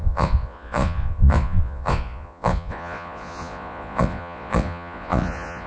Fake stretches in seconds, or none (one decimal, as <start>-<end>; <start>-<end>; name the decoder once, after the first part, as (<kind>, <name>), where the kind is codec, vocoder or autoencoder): 0.0-5.7 (vocoder, Vocos)